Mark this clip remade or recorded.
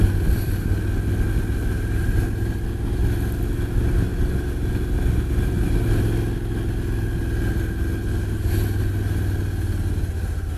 recorded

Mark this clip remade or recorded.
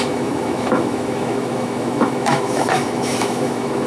remade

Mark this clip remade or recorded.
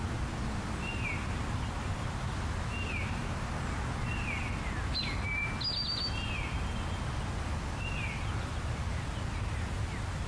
recorded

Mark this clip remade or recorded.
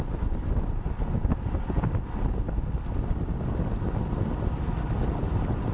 recorded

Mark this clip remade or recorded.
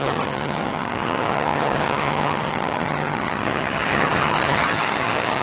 remade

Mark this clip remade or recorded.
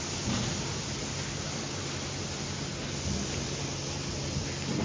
recorded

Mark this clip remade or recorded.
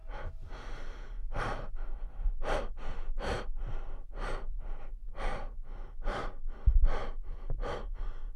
recorded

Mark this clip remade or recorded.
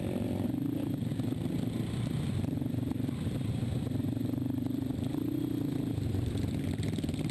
remade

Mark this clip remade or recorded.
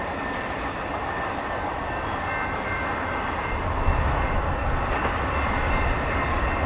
remade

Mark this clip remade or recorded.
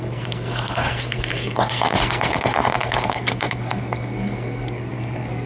remade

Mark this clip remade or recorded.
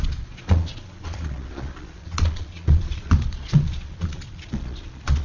remade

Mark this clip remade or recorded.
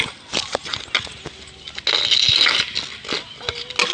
recorded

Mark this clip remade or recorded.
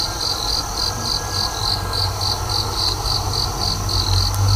recorded